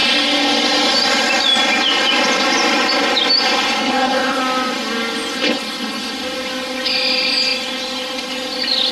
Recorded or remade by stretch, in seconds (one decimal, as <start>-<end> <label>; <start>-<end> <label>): 0.0-3.8 recorded; 3.8-4.4 remade; 4.4-5.3 recorded; 5.3-6.1 remade; 6.1-8.9 recorded